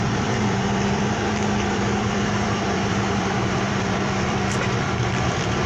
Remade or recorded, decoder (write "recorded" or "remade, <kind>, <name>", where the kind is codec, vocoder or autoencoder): remade, vocoder, BigVGAN v2